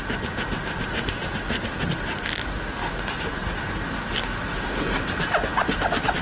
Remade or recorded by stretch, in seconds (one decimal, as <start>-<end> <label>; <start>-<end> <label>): 0.0-6.2 recorded